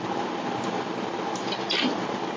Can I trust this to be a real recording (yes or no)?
yes